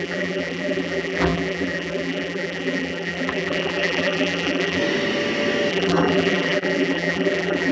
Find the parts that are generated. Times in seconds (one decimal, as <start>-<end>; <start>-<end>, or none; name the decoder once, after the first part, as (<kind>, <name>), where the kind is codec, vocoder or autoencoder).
0.0-4.8 (vocoder, BigVGAN v2); 5.7-7.7